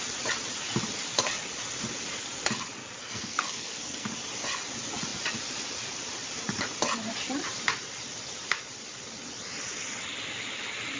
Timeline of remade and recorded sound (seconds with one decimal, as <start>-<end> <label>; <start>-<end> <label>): 0.0-3.0 recorded; 3.0-4.1 remade; 4.1-11.0 recorded